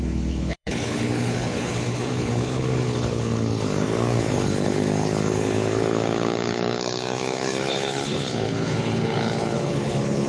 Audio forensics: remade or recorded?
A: remade